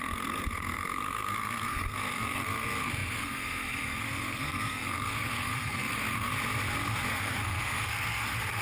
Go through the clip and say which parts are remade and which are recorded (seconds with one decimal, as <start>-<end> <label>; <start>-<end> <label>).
0.0-6.3 remade; 6.3-7.1 recorded; 7.1-8.6 remade